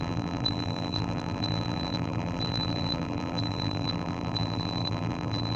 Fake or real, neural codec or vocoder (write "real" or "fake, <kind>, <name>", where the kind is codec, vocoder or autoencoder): fake, vocoder, BigVGAN v2